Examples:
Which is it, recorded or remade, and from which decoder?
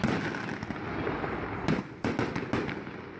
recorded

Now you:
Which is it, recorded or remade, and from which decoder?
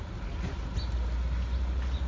recorded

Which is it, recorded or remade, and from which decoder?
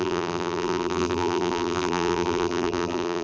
remade, vocoder, BigVGAN v2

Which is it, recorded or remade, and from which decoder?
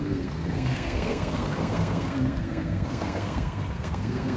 remade, codec, SNAC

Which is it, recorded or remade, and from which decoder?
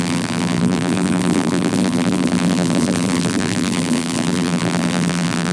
remade, vocoder, BigVGAN v2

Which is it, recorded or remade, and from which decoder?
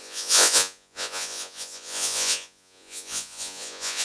remade, vocoder, Vocos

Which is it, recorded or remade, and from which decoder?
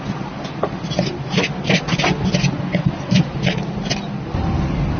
recorded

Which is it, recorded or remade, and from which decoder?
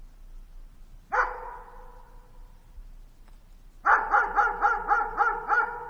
recorded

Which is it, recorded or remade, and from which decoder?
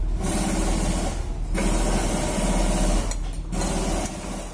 recorded